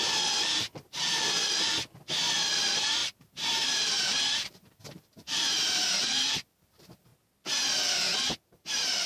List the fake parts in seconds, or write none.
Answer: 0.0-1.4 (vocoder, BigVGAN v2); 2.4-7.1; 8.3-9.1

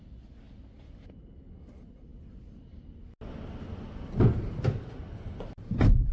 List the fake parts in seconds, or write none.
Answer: none

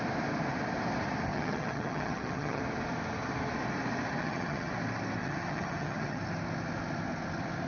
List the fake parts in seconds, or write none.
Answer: 1.3-2.6 (vocoder, HiFi-GAN); 4.2-4.7; 5.2-6.2

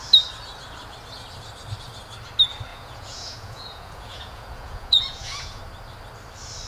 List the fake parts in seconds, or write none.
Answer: 2.7-5.6 (vocoder, Vocos)

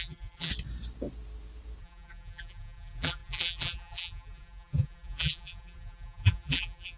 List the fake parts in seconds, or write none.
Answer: 0.0-0.5 (vocoder, BigVGAN v2); 1.8-7.0

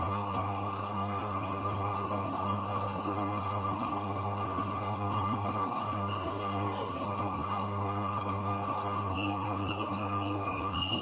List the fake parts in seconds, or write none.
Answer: 0.0-11.0 (codec, SNAC)